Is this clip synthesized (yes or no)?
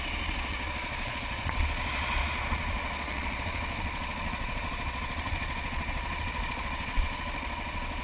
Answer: yes